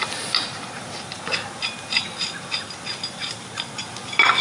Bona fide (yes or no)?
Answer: yes